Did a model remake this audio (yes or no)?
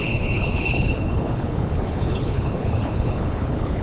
yes